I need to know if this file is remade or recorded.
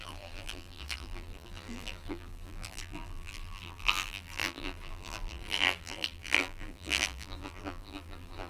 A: remade